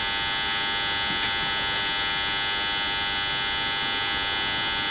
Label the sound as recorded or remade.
recorded